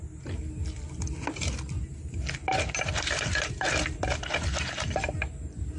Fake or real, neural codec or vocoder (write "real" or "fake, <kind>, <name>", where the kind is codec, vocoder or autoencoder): real